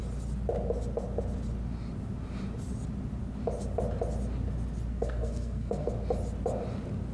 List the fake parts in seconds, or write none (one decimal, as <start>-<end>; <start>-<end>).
4.9-5.9